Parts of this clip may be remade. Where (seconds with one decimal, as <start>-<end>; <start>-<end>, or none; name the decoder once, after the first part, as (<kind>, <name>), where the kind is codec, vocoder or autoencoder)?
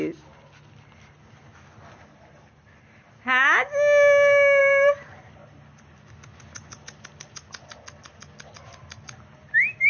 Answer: 4.6-6.1 (vocoder, BigVGAN v2)